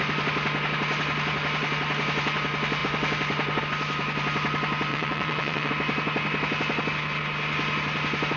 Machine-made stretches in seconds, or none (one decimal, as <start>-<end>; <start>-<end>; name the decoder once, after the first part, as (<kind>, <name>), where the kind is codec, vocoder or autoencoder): 4.9-5.7 (vocoder, WaveNeXt)